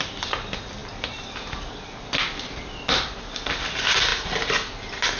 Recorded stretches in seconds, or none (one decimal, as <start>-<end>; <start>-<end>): 0.0-5.2